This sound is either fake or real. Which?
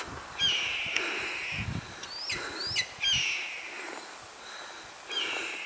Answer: real